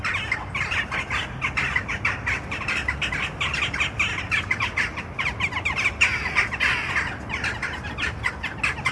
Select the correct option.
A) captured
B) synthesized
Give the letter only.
A